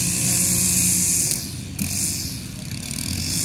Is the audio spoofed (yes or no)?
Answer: no